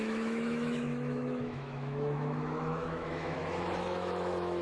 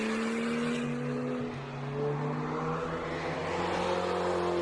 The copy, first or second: first